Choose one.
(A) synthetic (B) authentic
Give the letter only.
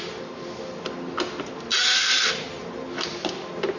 B